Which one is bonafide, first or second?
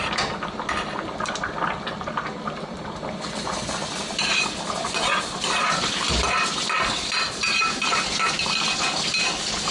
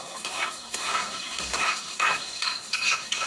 first